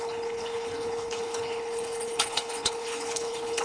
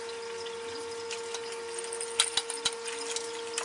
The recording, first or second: second